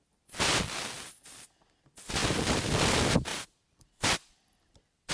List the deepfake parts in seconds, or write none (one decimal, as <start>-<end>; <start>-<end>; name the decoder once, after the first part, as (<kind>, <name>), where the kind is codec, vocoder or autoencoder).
2.2-2.9 (vocoder, BigVGAN v2); 3.3-5.1